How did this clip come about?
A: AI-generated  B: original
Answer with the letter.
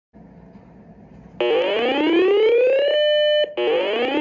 B